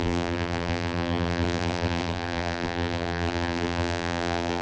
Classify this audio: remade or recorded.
remade